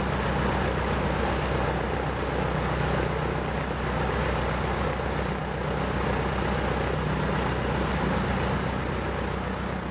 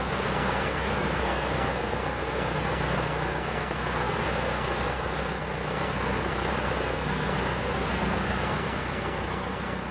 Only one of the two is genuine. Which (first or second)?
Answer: first